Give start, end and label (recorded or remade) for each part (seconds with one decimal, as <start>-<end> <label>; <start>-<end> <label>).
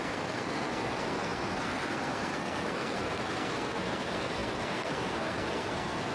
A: 0.0-6.1 remade